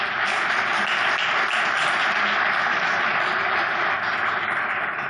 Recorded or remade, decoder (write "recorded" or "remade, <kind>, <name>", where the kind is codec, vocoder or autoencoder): recorded